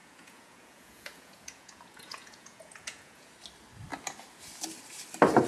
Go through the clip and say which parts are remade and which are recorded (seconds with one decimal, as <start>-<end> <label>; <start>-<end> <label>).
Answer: 0.0-3.3 remade; 3.3-5.5 recorded